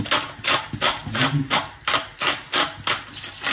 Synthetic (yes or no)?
no